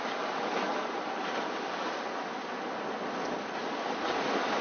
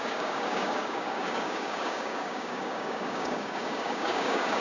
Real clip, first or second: first